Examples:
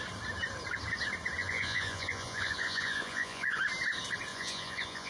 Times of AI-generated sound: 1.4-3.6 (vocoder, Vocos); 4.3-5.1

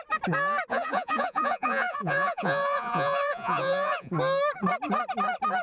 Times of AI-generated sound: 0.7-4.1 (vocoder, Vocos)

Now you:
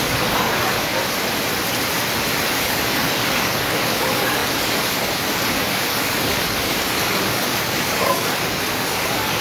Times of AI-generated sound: 0.0-0.9 (codec, DAC); 2.5-9.4

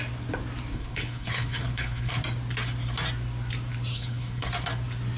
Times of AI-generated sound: 0.7-2.1 (codec, HILCodec); 3.9-4.5

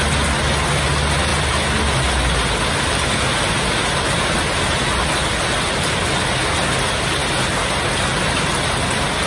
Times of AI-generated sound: none

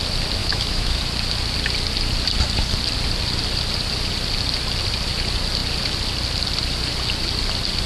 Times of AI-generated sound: 0.4-1.0 (autoencoder, DAC-VAE)

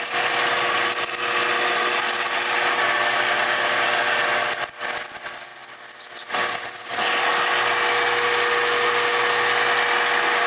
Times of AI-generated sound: none